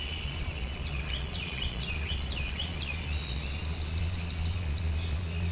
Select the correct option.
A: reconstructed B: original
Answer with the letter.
A